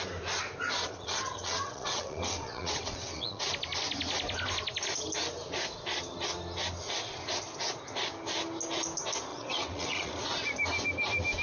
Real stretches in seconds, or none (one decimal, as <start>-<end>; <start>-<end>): 0.0-0.8; 3.4-9.3; 10.1-11.4